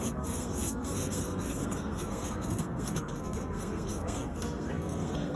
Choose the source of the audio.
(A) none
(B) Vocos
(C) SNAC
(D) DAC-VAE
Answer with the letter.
C